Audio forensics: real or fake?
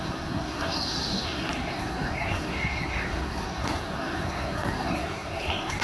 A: fake